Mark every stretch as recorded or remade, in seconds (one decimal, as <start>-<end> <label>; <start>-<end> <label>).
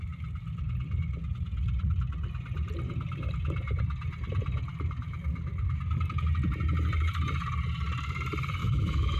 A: 0.0-8.6 recorded; 8.6-9.2 remade